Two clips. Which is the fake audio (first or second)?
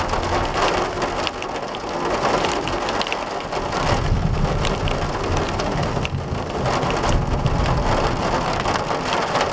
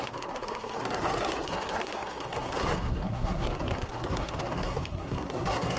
second